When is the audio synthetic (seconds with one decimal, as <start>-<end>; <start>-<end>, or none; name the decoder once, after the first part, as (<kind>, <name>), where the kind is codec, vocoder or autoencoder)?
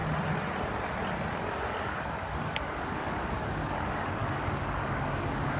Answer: 1.8-5.6 (codec, DAC)